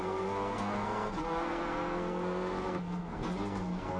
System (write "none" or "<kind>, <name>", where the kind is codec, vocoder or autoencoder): codec, SNAC